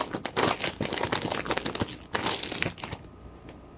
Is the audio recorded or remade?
recorded